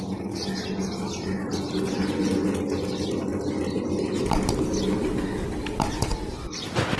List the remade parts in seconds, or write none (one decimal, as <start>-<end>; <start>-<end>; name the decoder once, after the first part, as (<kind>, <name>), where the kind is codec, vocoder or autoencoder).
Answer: none

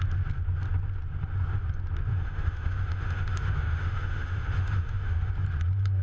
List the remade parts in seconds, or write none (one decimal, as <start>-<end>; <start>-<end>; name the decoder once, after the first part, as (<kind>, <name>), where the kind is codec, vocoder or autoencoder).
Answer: 2.1-5.3 (autoencoder, DAC-VAE)

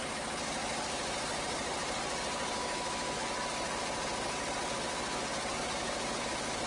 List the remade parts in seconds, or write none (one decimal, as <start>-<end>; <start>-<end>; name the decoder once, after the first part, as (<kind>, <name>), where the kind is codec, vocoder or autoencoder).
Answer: 2.5-3.2 (autoencoder, DAC-VAE)

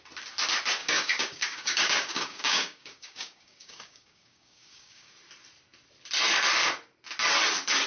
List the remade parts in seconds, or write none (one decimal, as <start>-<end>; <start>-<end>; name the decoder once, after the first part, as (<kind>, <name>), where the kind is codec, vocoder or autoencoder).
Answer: 0.8-5.1 (codec, DAC)

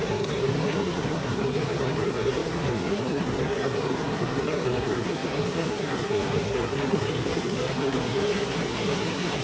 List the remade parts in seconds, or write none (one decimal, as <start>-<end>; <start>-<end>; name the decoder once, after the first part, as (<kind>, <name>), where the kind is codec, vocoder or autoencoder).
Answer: 0.0-9.4 (codec, SNAC)

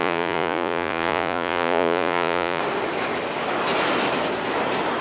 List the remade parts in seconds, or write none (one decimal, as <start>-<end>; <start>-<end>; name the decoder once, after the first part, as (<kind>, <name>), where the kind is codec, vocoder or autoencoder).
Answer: 0.0-2.6 (vocoder, Vocos)

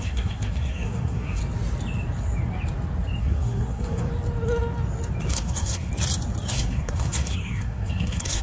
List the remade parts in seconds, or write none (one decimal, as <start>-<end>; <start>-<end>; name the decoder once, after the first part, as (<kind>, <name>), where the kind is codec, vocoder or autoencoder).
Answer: 0.0-1.4 (codec, SNAC); 3.2-4.1; 5.3-5.9; 6.5-8.4

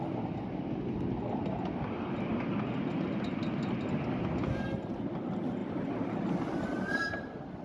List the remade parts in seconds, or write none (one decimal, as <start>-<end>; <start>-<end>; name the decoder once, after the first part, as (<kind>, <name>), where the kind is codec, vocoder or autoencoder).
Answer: none